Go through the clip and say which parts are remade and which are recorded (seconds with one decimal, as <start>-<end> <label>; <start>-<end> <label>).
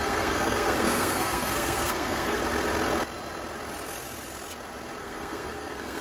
0.0-2.4 remade; 2.4-5.0 recorded; 5.0-6.0 remade